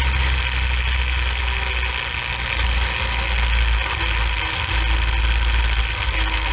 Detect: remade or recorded recorded